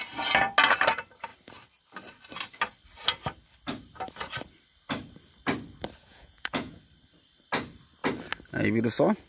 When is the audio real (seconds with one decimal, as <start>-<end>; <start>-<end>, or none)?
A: 0.0-6.1; 6.8-9.3